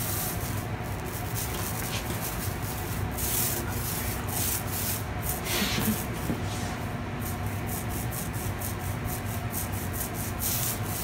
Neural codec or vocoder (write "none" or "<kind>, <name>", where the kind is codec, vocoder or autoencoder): none